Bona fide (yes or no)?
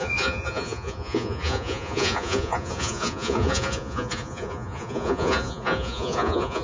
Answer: no